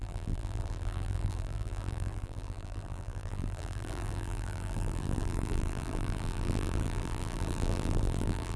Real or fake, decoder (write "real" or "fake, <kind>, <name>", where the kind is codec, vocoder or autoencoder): fake, vocoder, BigVGAN v2